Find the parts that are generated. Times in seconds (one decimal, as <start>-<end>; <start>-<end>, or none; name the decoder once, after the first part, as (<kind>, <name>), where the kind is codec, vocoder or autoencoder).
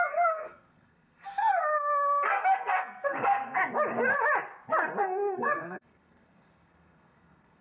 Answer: 0.0-3.6 (codec, SNAC); 5.0-7.6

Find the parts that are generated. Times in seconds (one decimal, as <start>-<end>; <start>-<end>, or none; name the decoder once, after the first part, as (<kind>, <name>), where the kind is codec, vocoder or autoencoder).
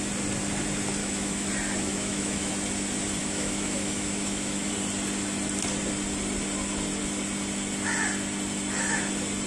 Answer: 1.0-1.5 (autoencoder, DAC-VAE); 1.9-2.5; 3.2-4.7